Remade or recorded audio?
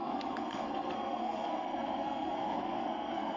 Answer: remade